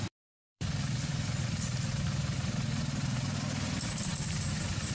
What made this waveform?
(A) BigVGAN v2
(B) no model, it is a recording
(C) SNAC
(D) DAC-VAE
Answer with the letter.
A